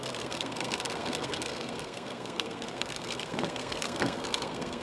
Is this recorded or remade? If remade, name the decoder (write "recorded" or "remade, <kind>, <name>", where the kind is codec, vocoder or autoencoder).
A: remade, codec, SNAC